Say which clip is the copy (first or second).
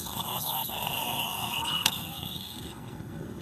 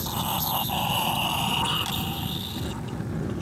first